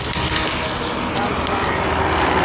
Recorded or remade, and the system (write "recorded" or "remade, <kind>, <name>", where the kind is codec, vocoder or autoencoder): recorded